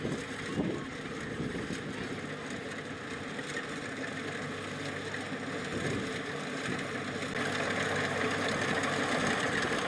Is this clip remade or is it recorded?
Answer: recorded